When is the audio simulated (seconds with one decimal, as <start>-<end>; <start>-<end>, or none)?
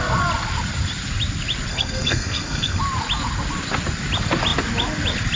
1.7-2.8